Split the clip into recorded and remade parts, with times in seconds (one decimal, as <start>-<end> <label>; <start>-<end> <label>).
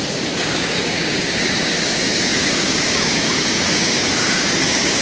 0.0-5.0 remade